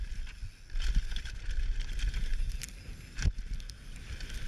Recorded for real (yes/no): yes